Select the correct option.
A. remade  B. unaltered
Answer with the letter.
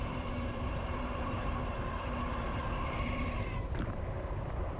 A